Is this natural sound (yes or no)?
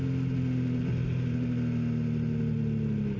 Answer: yes